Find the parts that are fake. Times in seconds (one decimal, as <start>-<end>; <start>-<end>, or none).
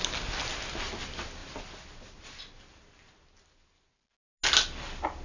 none